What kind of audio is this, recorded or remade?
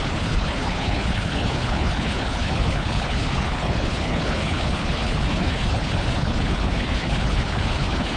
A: remade